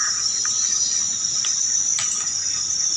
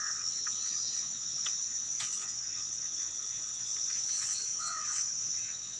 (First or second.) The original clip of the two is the first